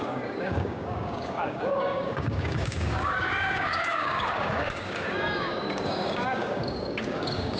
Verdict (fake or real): fake